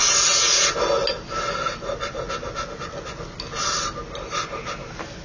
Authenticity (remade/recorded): recorded